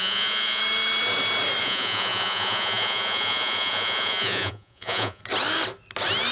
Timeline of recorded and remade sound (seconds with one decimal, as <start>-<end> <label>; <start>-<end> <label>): 0.0-0.6 remade; 0.6-1.6 recorded; 1.6-5.2 remade; 5.2-6.3 recorded